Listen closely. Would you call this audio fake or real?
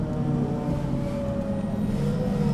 real